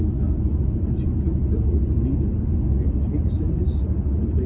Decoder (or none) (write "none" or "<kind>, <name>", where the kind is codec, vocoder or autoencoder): none